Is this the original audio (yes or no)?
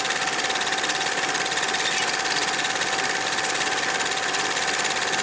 yes